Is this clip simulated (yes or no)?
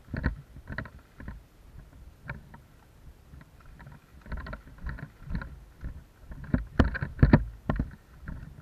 no